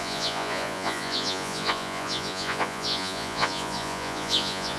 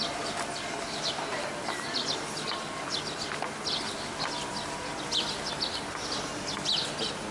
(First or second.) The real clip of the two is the second